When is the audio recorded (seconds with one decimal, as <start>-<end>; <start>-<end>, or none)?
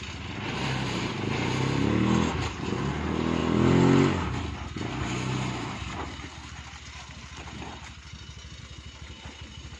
0.0-0.6; 1.1-9.8